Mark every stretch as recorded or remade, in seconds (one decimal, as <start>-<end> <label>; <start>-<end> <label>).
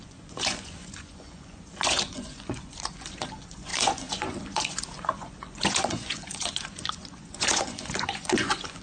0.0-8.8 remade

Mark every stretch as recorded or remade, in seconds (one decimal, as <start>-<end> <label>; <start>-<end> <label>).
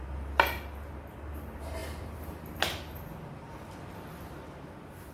0.0-5.1 recorded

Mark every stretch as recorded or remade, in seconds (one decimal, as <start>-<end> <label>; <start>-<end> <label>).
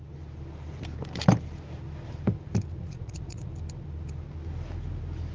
0.0-2.7 recorded; 2.7-3.5 remade; 3.5-5.3 recorded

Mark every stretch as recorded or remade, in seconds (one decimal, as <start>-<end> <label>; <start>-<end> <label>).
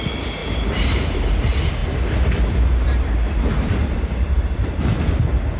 0.0-0.4 recorded; 0.4-1.4 remade; 1.4-1.8 recorded; 1.8-5.1 remade; 5.1-5.6 recorded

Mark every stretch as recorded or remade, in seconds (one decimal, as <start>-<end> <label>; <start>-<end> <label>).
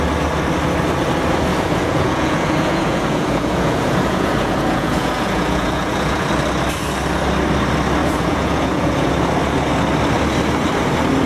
0.0-1.5 recorded; 1.5-6.3 remade; 6.3-8.0 recorded; 8.0-9.1 remade; 9.1-11.3 recorded